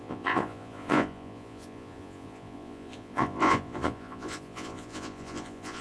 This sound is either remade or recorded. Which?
remade